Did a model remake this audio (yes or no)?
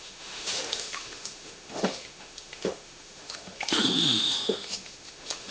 yes